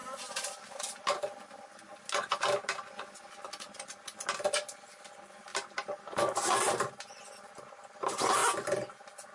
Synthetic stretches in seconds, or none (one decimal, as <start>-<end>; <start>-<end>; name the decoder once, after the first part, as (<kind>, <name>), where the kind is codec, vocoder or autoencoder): none